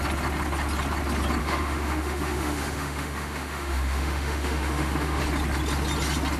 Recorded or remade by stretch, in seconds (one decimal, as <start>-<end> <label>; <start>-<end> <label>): 0.0-1.4 recorded; 1.4-5.2 remade; 5.2-6.4 recorded